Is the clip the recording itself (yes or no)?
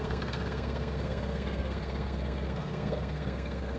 no